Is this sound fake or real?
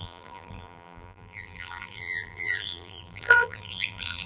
fake